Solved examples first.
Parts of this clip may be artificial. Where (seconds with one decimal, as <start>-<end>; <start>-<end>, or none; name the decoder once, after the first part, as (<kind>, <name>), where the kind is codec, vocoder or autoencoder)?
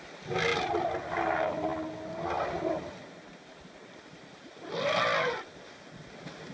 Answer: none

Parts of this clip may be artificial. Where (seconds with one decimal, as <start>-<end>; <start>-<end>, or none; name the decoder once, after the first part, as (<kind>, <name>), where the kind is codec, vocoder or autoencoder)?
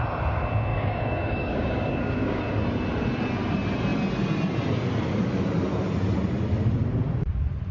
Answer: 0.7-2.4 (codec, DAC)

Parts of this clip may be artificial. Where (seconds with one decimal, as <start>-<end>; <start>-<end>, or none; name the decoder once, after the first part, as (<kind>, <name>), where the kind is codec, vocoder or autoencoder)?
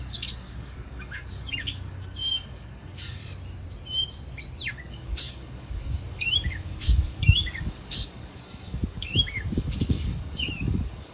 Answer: 0.0-3.2 (codec, DAC); 4.7-11.1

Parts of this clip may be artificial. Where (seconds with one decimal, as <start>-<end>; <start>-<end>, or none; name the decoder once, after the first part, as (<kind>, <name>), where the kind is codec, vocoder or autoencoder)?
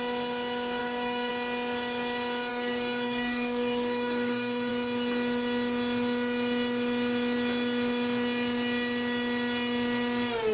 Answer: 0.8-1.3 (codec, DAC); 2.5-4.7